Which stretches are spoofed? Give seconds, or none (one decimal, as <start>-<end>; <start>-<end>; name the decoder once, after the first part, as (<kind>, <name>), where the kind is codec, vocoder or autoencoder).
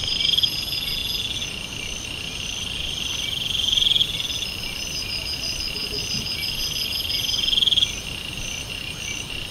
0.0-0.5 (vocoder, BigVGAN v2)